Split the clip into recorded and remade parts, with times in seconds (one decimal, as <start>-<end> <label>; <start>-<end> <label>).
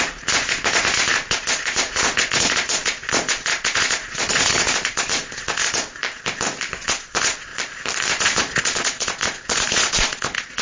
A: 0.0-6.0 remade; 6.0-6.7 recorded; 6.7-7.5 remade; 7.5-8.1 recorded; 8.1-10.6 remade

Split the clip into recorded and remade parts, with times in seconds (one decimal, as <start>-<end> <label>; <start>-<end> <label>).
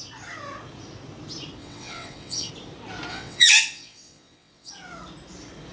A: 0.0-1.6 recorded; 1.6-2.5 remade; 2.5-3.1 recorded; 3.1-4.7 remade; 4.7-5.7 recorded